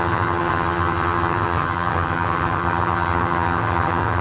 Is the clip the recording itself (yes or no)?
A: no